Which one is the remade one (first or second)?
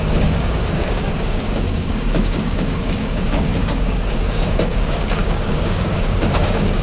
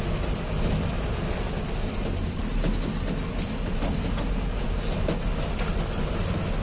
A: first